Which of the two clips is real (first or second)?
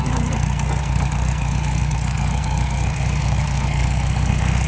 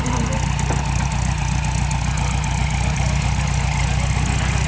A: second